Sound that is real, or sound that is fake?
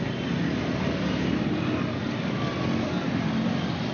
real